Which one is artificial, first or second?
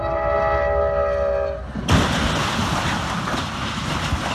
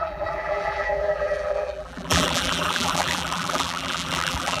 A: second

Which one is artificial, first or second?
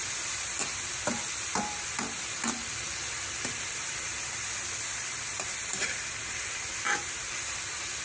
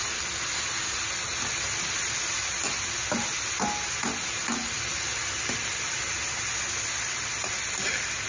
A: first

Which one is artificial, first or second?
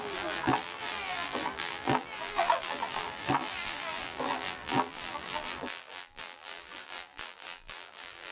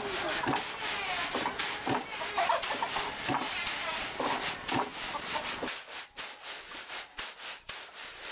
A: first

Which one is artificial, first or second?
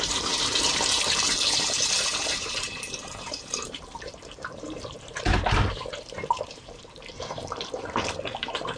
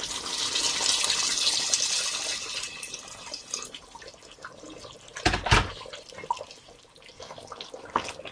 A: first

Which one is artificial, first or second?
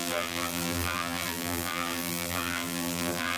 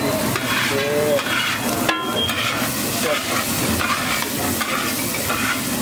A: first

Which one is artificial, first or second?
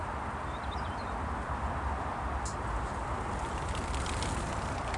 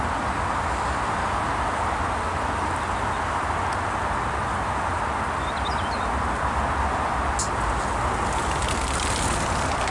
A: first